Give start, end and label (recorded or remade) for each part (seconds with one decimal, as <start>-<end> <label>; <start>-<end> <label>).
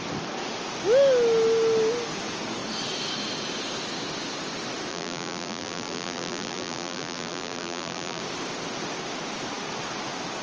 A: 0.0-4.9 recorded; 4.9-8.2 remade; 8.2-10.4 recorded